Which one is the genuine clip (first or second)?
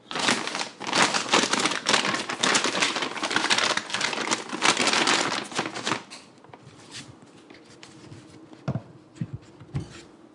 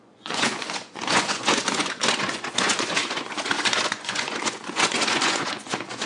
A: first